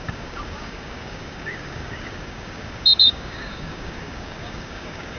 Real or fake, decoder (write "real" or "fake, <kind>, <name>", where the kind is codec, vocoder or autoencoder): fake, codec, DAC